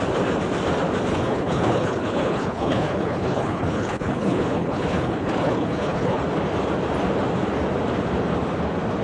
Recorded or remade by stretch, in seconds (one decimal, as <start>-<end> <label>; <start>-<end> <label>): 0.0-1.1 recorded; 1.1-6.2 remade; 6.2-9.0 recorded